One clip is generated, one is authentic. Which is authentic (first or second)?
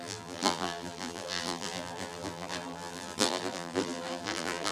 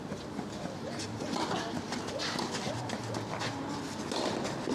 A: second